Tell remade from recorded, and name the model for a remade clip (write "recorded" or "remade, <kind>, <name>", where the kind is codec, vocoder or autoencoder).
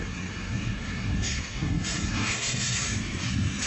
remade, codec, SNAC